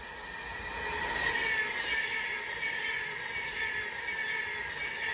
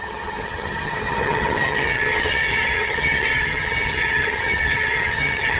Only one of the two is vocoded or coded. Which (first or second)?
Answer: second